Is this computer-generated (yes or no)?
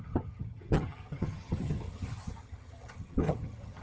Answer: yes